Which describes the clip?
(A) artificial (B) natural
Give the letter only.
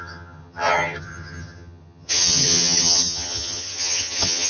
A